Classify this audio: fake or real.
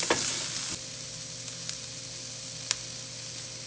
real